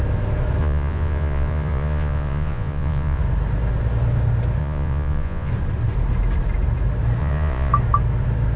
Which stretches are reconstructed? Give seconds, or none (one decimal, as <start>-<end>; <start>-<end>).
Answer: 0.6-3.2; 4.6-5.5; 7.2-7.7